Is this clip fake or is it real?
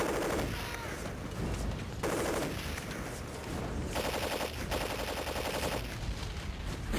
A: real